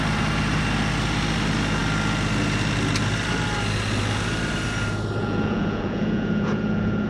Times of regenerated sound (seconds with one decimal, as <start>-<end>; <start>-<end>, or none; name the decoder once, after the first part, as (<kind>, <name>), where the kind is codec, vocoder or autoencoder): 5.2-7.1 (vocoder, Vocos)